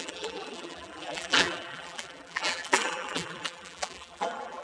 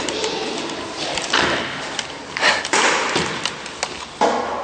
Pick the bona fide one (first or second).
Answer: second